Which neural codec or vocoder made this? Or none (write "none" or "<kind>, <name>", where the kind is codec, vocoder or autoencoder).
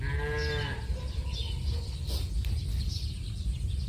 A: none